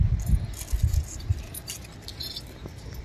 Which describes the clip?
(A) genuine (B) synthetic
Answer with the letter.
A